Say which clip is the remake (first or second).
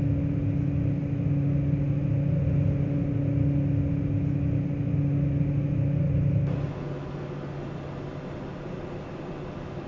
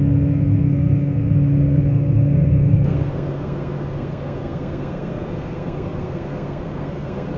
second